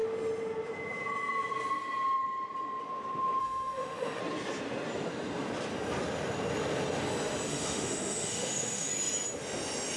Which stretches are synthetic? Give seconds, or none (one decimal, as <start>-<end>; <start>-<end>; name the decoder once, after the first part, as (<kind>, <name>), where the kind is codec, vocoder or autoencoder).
3.4-4.2 (autoencoder, DAC-VAE); 7.5-8.9